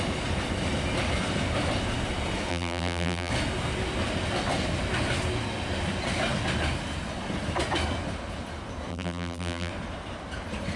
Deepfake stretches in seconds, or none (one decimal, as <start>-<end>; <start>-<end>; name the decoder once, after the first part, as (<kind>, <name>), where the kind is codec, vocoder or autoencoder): 2.5-3.3 (vocoder, BigVGAN v2); 8.9-9.7